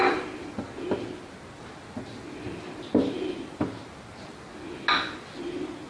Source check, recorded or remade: recorded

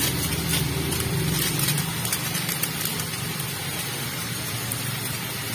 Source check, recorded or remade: remade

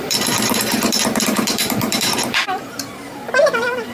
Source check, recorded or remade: remade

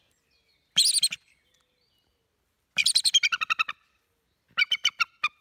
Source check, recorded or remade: recorded